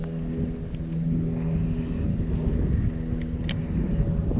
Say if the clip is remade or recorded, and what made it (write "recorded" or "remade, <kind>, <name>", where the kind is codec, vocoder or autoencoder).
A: recorded